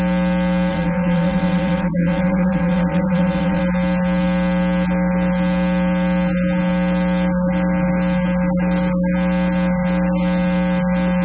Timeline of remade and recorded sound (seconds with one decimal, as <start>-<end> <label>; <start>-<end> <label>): 0.0-0.7 recorded; 0.7-3.6 remade; 3.6-11.2 recorded